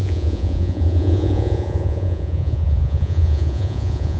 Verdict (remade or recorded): remade